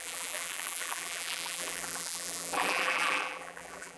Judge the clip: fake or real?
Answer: fake